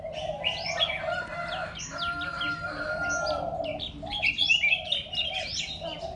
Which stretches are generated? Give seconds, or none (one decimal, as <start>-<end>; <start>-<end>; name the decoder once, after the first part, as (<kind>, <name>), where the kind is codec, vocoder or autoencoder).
none